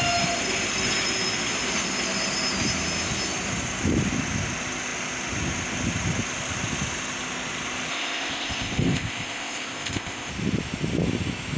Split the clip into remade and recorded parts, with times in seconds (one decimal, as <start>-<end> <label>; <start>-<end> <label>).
0.0-7.9 recorded; 7.9-10.3 remade; 10.3-11.6 recorded

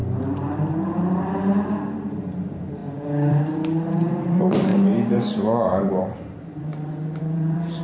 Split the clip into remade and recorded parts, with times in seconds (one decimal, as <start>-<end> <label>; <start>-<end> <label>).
0.0-6.7 remade; 6.7-7.2 recorded; 7.2-7.8 remade